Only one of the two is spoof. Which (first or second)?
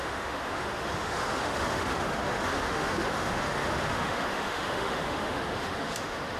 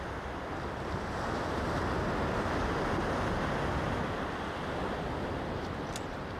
first